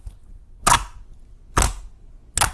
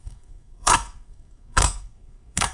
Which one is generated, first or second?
second